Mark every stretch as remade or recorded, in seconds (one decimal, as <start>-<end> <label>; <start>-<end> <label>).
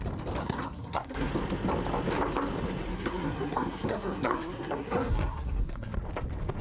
0.0-0.4 recorded; 0.4-1.3 remade; 1.3-2.9 recorded; 2.9-6.0 remade; 6.0-6.6 recorded